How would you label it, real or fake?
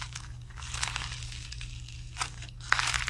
fake